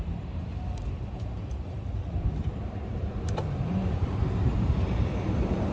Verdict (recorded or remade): remade